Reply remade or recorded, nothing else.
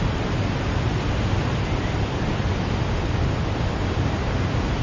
recorded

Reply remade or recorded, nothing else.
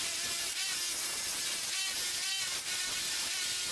recorded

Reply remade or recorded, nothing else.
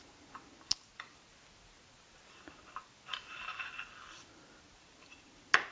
recorded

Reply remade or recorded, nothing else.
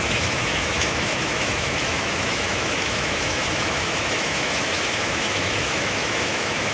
remade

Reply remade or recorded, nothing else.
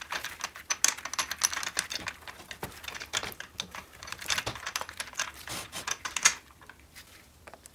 recorded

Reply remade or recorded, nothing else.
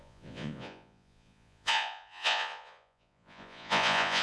remade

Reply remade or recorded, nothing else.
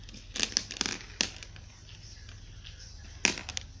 recorded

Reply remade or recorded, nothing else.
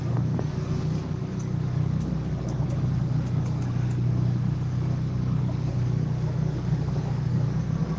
remade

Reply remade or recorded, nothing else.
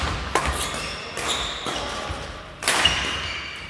recorded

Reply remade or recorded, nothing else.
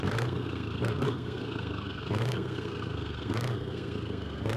remade